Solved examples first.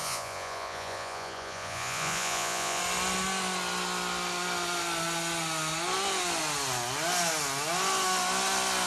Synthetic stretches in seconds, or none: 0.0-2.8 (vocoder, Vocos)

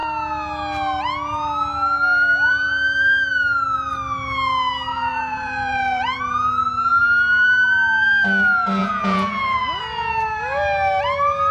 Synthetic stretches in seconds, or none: 4.9-6.2 (vocoder, Vocos); 8.8-9.8

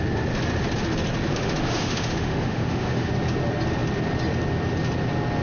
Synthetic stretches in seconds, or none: 1.3-3.1 (autoencoder, DAC-VAE)

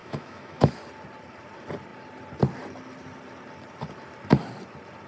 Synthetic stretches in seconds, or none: 0.0-0.7 (autoencoder, DAC-VAE)

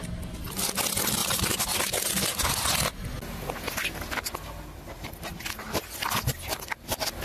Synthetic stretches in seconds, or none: 1.2-2.5 (vocoder, BigVGAN v2)

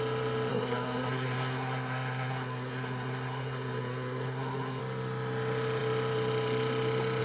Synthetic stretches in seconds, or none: 0.5-4.8 (codec, SNAC)

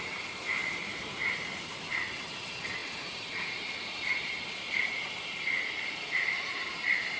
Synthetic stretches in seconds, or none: 0.0-7.2 (vocoder, BigVGAN v2)

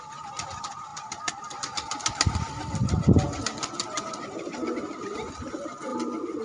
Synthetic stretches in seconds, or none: 5.9-6.4 (vocoder, BigVGAN v2)